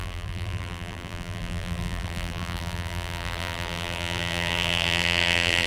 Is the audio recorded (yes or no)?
no